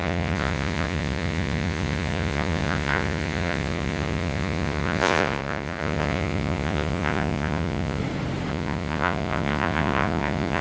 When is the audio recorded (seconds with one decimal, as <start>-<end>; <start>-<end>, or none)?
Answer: 8.0-8.5